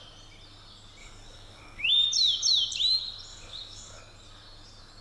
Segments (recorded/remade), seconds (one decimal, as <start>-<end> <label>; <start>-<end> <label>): 0.0-1.0 recorded; 1.0-1.9 remade; 1.9-3.3 recorded; 3.3-4.0 remade; 4.0-5.0 recorded